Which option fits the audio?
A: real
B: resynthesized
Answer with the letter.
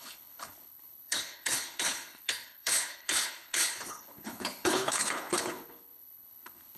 B